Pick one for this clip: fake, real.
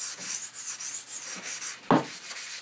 real